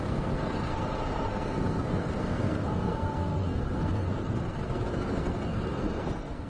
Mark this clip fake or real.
fake